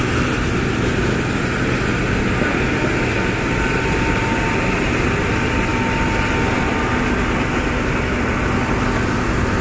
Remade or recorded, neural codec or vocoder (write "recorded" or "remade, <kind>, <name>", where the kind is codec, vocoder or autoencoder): recorded